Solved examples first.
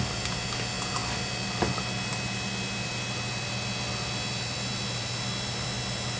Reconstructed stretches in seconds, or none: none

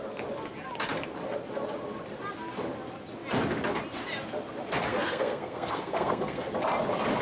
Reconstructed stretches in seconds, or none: 4.9-6.5 (codec, SNAC)

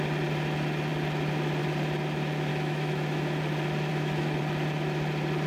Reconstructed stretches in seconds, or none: 2.5-3.4 (autoencoder, DAC-VAE); 3.9-4.4

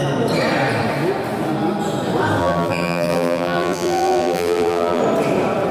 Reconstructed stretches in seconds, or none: 2.4-5.0 (vocoder, BigVGAN v2)

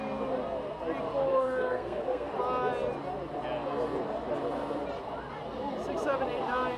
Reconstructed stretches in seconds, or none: 1.3-2.3 (codec, SNAC)